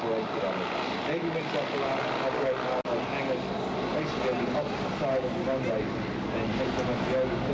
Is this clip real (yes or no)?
yes